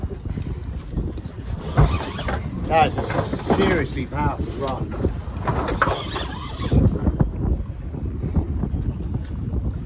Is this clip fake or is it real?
real